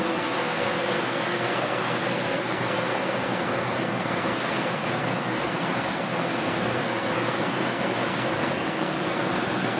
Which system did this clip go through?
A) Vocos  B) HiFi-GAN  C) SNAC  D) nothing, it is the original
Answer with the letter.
C